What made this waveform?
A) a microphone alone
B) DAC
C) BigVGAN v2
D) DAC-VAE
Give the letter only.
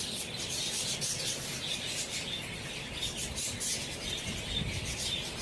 A